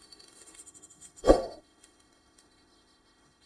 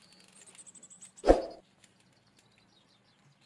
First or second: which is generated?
first